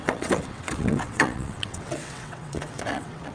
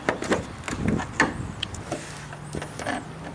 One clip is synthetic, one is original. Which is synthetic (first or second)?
first